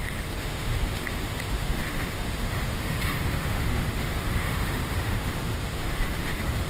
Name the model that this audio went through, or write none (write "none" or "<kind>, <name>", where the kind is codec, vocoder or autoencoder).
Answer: autoencoder, DAC-VAE